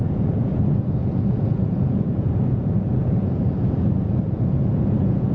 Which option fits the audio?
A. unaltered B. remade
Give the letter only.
B